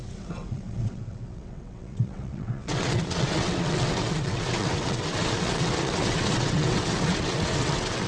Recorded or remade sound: remade